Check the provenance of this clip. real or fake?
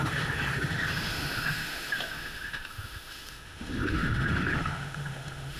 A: fake